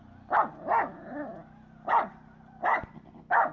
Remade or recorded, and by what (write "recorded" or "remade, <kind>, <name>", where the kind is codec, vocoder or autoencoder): recorded